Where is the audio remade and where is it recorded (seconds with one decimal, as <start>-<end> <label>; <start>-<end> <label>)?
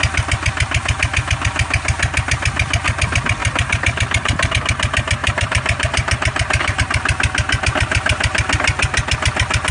0.0-3.4 recorded; 3.4-4.5 remade; 4.5-5.2 recorded; 5.2-6.8 remade; 6.8-9.7 recorded